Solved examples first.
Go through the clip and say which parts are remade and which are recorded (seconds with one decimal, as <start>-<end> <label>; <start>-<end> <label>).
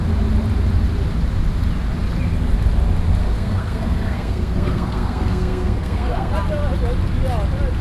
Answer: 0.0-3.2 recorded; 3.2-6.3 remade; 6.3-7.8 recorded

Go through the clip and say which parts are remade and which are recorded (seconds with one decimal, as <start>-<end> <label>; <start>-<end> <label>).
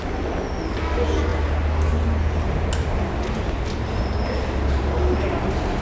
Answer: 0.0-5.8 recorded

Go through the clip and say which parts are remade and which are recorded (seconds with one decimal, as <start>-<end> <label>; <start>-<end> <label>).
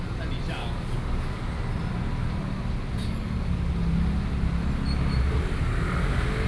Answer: 0.0-0.6 recorded; 0.6-1.5 remade; 1.5-3.0 recorded; 3.0-3.7 remade; 3.7-6.5 recorded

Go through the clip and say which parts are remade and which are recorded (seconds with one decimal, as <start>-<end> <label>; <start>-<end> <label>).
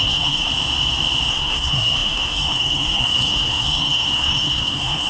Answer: 0.0-0.5 remade; 0.5-1.3 recorded; 1.3-5.1 remade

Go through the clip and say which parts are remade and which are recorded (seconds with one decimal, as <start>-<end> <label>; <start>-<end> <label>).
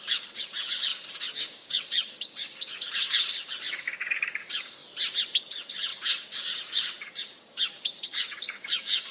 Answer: 0.0-4.8 remade; 4.8-5.4 recorded; 5.4-9.1 remade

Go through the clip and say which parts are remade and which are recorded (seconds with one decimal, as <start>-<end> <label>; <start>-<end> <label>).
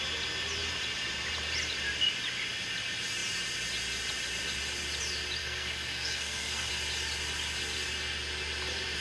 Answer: 0.0-5.4 recorded; 5.4-6.7 remade; 6.7-9.0 recorded